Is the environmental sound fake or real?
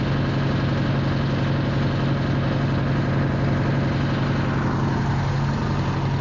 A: real